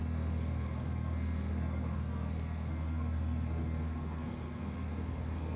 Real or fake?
fake